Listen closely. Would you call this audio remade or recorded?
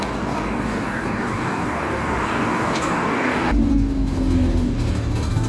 remade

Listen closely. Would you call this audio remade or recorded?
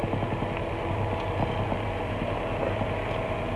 recorded